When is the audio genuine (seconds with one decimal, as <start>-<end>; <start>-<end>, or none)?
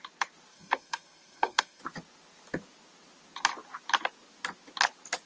0.0-0.5; 1.8-5.3